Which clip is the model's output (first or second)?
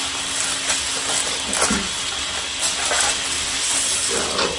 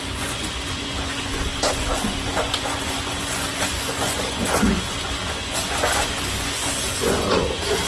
second